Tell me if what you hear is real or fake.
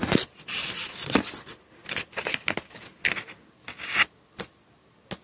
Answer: real